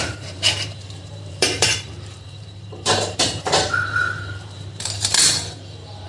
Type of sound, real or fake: fake